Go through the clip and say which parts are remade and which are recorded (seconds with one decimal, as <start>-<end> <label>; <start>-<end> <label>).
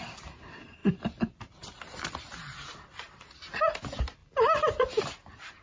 0.0-5.6 recorded